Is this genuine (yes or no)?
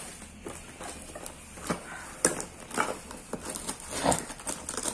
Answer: yes